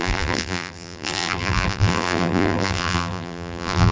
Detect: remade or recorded remade